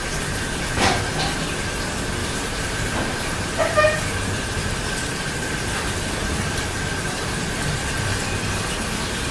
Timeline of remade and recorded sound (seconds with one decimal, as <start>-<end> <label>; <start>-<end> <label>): 0.0-2.2 recorded; 2.2-4.0 remade; 4.0-9.3 recorded